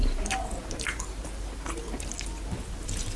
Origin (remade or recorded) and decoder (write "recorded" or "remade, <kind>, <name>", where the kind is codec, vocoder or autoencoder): recorded